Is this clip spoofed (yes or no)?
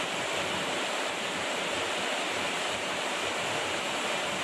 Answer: yes